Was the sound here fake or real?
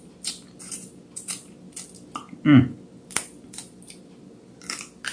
real